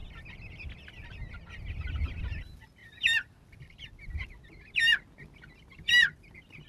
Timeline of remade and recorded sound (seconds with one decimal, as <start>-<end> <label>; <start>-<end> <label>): 0.0-6.7 recorded